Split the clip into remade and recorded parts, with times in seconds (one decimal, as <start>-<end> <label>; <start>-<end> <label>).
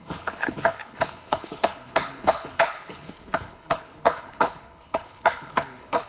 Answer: 0.0-6.1 remade